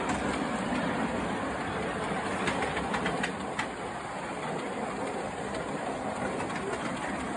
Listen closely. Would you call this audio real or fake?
real